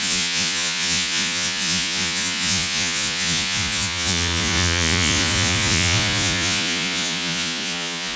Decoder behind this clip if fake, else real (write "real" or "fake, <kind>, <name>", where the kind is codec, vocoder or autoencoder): fake, vocoder, Vocos